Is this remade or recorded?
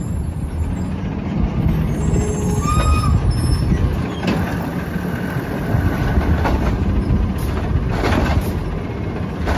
recorded